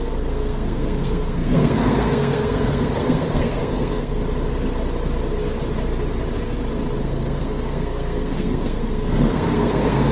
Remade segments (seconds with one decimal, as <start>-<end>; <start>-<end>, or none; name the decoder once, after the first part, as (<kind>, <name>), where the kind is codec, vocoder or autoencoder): 0.0-4.2 (codec, SNAC); 7.0-10.1